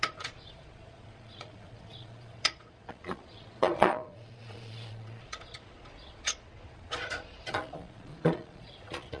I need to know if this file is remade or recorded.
remade